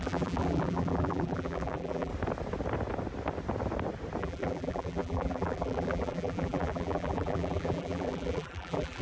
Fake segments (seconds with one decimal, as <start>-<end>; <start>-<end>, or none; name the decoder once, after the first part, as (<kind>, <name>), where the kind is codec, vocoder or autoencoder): 0.0-2.1 (vocoder, BigVGAN v2); 4.2-9.0